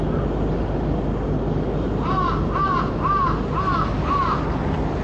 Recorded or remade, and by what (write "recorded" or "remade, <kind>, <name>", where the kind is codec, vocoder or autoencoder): recorded